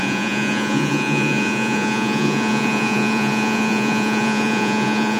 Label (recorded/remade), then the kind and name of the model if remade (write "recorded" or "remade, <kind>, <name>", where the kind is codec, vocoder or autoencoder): remade, vocoder, Vocos